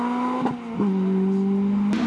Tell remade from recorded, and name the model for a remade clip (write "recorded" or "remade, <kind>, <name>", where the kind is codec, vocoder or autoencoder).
recorded